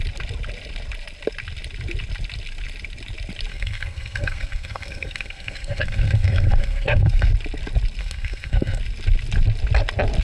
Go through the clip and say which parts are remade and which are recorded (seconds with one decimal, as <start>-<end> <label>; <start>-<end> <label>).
0.0-3.5 recorded; 3.5-7.3 remade; 7.3-8.0 recorded; 8.0-8.8 remade; 8.8-10.2 recorded